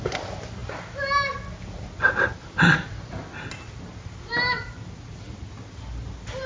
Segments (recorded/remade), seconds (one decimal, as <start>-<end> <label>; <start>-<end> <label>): 0.0-6.5 recorded